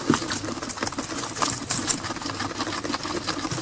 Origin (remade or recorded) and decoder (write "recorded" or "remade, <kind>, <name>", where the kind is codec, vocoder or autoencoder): recorded